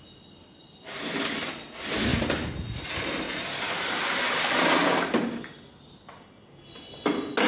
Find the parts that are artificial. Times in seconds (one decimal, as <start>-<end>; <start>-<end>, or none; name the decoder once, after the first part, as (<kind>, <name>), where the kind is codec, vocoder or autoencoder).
none